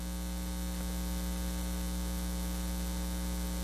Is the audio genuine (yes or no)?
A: yes